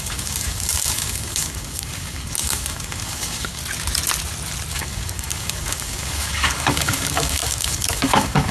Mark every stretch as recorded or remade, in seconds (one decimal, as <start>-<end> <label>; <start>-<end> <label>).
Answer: 0.0-3.6 remade; 3.6-4.7 recorded; 4.7-8.5 remade